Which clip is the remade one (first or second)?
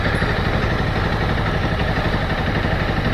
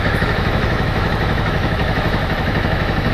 second